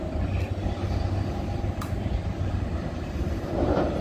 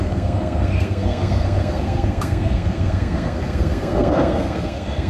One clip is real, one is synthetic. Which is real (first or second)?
first